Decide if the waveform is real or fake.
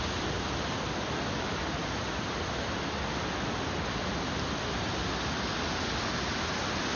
real